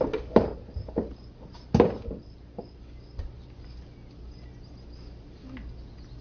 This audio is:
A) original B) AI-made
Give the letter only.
A